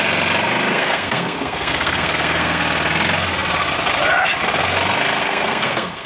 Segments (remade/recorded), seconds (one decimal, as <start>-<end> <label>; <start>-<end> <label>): 0.0-0.7 recorded; 0.7-2.6 remade; 2.6-5.2 recorded; 5.2-6.1 remade